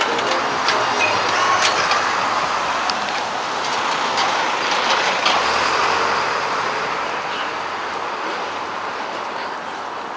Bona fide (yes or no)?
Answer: yes